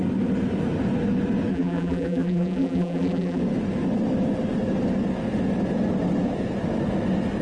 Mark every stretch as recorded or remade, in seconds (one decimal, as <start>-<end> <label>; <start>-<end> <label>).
0.0-1.5 recorded; 1.5-3.4 remade; 3.4-7.4 recorded